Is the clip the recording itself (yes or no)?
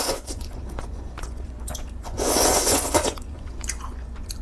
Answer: no